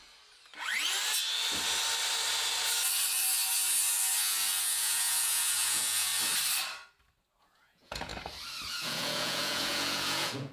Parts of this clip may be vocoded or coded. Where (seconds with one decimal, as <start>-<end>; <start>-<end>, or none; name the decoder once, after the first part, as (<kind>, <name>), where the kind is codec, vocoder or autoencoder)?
4.6-6.1 (vocoder, Vocos); 7.4-8.1; 8.7-10.5